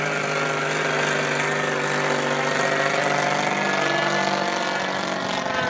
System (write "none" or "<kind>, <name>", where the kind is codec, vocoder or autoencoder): none